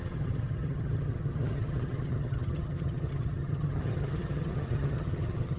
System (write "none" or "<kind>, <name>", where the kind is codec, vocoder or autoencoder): vocoder, HiFi-GAN